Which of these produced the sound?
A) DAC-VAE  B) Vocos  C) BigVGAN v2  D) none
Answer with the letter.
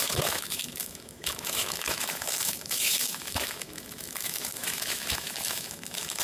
A